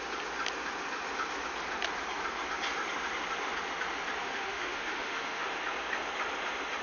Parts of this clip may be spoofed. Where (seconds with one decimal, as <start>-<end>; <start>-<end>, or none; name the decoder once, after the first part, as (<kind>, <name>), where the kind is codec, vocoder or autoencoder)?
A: 4.2-5.5 (autoencoder, DAC-VAE)